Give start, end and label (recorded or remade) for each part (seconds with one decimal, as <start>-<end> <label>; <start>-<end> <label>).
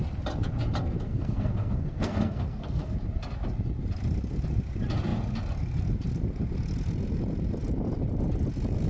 0.0-0.8 recorded; 0.8-2.9 remade; 2.9-8.9 recorded